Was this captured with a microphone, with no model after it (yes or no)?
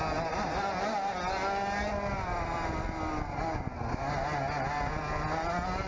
yes